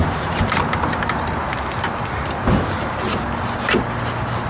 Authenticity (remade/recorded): recorded